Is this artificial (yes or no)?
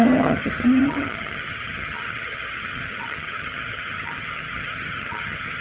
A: yes